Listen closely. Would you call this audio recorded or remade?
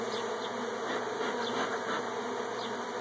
recorded